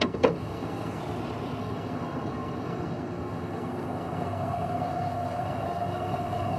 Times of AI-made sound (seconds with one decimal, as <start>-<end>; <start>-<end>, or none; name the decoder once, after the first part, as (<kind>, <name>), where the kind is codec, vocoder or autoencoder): 0.0-1.0 (codec, SNAC); 1.6-6.6